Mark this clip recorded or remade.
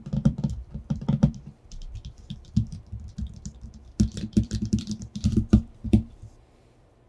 remade